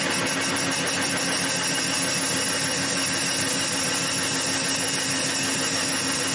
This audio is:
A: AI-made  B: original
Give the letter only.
B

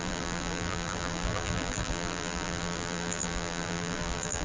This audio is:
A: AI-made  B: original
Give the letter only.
A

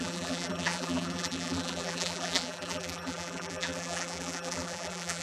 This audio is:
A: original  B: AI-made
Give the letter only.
B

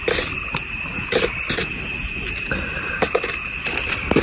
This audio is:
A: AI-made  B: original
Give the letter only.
B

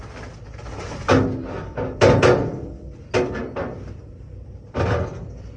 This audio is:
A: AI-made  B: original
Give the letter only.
B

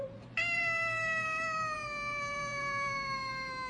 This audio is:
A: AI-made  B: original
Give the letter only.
A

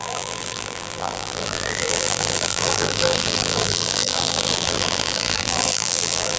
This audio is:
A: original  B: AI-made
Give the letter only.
B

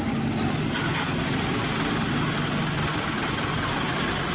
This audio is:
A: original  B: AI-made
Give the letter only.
A